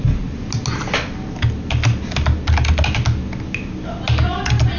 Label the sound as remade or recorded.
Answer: recorded